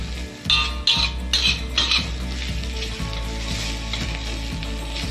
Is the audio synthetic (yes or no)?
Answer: no